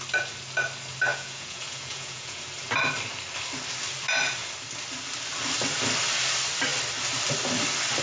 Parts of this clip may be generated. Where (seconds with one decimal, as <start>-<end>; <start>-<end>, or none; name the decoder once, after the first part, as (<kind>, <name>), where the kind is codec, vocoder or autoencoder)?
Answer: 1.1-2.4 (vocoder, Vocos)